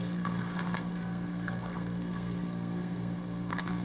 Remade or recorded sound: remade